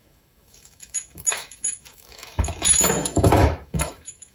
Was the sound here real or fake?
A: fake